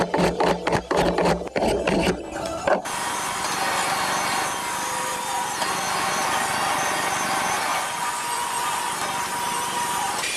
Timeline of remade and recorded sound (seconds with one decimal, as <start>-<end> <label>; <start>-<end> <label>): 0.0-7.7 recorded; 7.7-8.8 remade; 8.8-10.4 recorded